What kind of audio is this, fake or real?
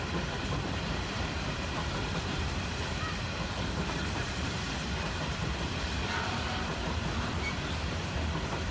fake